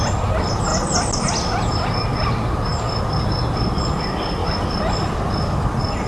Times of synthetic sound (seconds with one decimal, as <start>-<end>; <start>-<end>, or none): none